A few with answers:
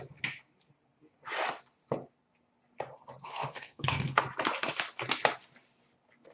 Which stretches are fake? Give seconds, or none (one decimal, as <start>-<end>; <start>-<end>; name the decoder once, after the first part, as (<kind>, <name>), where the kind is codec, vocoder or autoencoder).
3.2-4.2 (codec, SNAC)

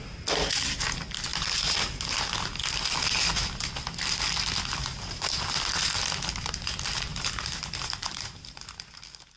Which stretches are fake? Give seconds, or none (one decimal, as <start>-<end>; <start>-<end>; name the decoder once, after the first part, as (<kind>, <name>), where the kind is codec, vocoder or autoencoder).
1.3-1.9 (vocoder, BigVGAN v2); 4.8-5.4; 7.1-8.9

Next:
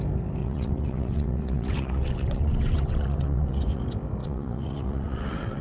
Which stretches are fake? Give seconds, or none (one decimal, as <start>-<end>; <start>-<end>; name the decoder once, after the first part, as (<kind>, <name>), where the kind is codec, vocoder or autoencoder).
0.4-3.8 (vocoder, WaveNeXt); 4.2-5.6

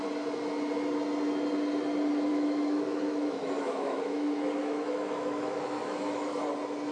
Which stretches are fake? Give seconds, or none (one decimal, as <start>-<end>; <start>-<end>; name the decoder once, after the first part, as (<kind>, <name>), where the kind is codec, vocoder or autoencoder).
2.3-6.4 (autoencoder, DAC-VAE)